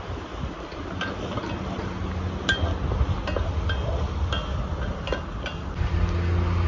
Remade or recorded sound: recorded